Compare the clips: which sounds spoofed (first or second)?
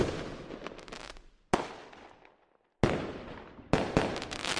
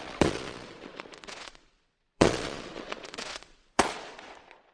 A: second